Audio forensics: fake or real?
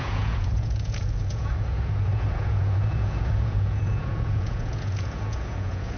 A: fake